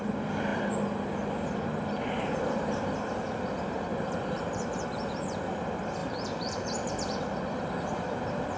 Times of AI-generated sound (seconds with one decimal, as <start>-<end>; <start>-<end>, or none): 3.9-5.0; 6.0-6.9